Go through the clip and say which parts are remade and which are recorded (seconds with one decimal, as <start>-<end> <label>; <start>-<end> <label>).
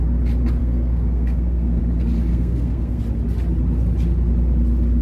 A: 0.0-0.6 recorded; 0.6-1.8 remade; 1.8-2.3 recorded; 2.3-3.0 remade; 3.0-5.0 recorded